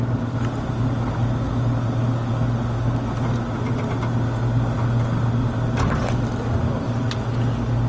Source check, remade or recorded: recorded